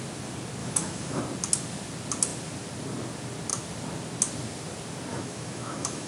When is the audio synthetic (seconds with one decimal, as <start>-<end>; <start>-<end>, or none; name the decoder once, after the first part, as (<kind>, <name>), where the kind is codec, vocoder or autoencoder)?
0.6-1.2 (autoencoder, DAC-VAE); 5.1-6.1